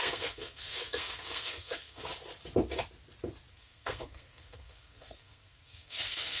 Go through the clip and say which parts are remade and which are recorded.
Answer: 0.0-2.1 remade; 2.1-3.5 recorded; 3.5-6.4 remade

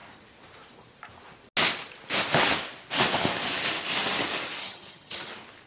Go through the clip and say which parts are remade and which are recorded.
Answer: 0.0-4.6 recorded; 4.6-5.3 remade; 5.3-5.7 recorded

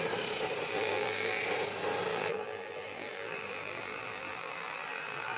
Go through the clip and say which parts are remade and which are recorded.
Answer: 0.0-0.7 recorded; 0.7-1.4 remade; 1.4-2.1 recorded; 2.1-5.4 remade